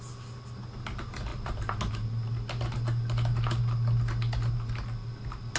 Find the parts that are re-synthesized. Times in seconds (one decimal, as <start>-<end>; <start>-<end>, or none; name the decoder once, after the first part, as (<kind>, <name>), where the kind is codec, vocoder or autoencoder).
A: none